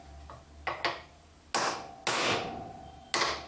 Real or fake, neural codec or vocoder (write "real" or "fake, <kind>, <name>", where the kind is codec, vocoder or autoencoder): real